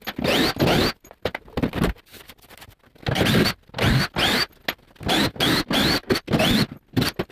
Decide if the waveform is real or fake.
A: real